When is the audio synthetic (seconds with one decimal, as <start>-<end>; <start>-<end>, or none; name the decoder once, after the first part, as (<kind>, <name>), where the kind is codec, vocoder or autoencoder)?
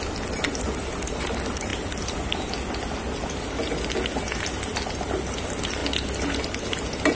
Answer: none